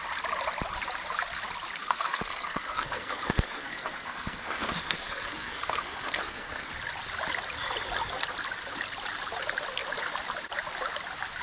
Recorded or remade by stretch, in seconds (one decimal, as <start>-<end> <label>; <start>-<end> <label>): 0.0-1.8 recorded; 1.8-6.7 remade; 6.7-11.4 recorded